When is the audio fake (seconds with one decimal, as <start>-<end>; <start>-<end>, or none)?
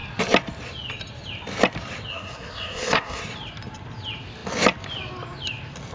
2.1-3.2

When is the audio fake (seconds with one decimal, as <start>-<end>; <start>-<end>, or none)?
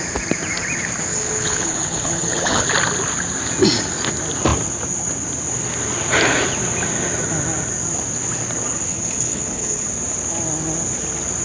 1.1-2.7; 8.9-9.9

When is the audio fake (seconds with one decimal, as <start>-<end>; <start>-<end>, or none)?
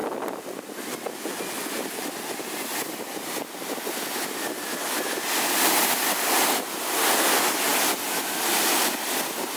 none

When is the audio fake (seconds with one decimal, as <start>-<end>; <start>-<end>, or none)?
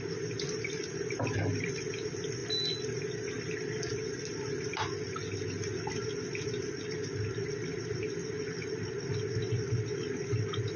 none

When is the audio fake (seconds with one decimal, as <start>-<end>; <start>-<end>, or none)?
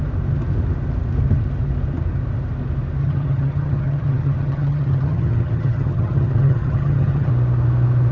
3.0-7.3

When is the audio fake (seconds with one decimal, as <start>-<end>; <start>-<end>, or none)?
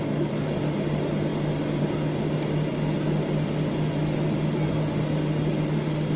none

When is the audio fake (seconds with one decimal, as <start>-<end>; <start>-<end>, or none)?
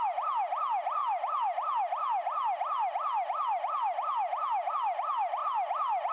none